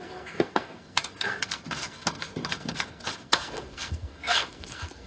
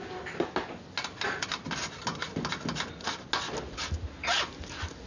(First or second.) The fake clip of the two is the first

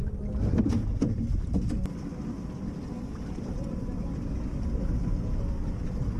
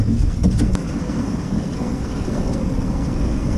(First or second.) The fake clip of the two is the second